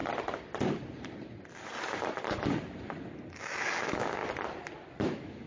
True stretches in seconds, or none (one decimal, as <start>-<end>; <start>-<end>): 0.0-3.3; 4.2-5.0